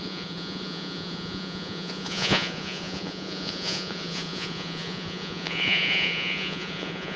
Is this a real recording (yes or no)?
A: no